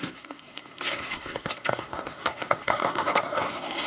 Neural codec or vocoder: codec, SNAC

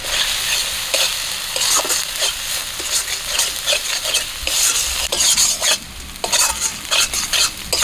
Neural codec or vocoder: none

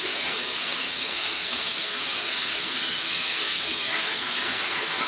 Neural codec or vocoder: codec, SNAC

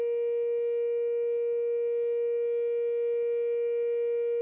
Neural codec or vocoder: none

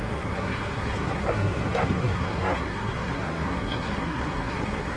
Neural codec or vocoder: codec, SNAC